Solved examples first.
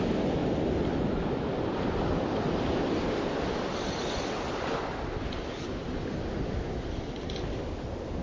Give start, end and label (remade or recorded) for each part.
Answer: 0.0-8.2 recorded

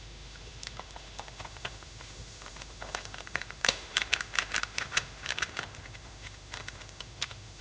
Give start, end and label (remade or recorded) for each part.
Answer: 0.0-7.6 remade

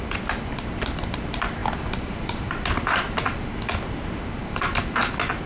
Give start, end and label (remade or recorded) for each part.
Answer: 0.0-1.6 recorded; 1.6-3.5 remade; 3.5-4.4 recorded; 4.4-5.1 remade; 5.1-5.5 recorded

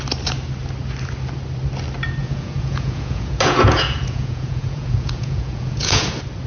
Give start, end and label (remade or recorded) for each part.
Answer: 0.0-2.2 recorded; 2.2-6.1 remade; 6.1-6.5 recorded